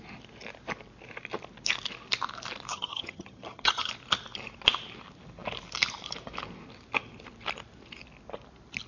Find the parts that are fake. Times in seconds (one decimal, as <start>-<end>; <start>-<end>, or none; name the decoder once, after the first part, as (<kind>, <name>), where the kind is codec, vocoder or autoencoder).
2.7-3.9 (vocoder, HiFi-GAN)